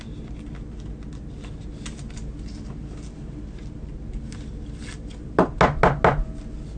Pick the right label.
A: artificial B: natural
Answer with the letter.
B